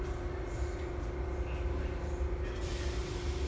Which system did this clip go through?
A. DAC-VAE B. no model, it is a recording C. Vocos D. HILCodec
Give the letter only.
B